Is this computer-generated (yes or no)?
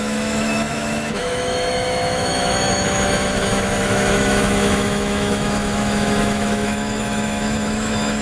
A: yes